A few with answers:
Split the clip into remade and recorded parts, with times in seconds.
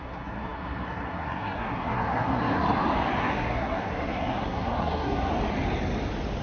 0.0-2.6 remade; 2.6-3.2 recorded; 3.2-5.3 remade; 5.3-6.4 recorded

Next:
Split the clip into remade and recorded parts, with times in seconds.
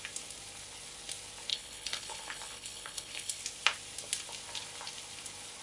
0.0-1.5 recorded; 1.5-3.4 remade; 3.4-5.6 recorded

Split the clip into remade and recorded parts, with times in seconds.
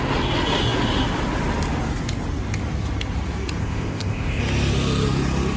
0.0-3.6 recorded; 3.6-4.4 remade; 4.4-5.6 recorded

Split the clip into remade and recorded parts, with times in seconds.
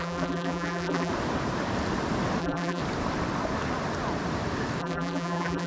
0.0-1.1 remade; 1.1-2.4 recorded; 2.4-2.8 remade; 2.8-4.8 recorded; 4.8-5.7 remade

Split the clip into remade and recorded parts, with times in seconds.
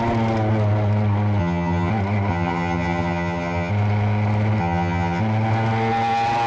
0.0-1.4 recorded; 1.4-1.9 remade; 1.9-2.3 recorded; 2.3-3.7 remade; 3.7-4.6 recorded; 4.6-5.2 remade; 5.2-6.5 recorded